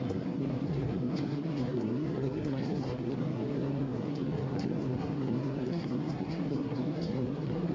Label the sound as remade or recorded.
remade